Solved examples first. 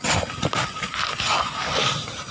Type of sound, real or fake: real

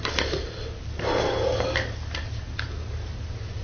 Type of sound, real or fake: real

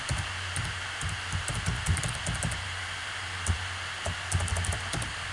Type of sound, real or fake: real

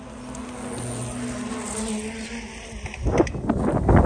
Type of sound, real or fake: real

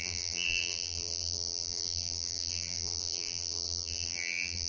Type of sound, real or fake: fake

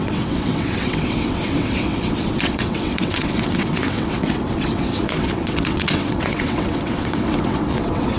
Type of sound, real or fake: fake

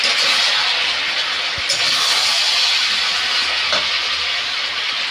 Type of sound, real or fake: real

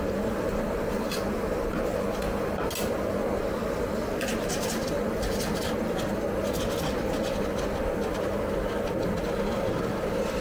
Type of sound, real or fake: real